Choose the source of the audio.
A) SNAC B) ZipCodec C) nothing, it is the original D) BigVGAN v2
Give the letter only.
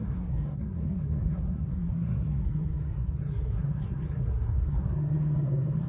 A